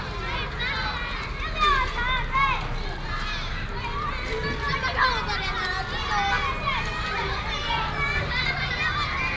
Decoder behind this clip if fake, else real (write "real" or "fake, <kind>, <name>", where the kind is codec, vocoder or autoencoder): real